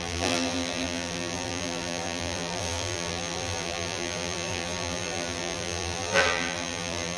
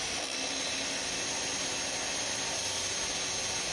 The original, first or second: second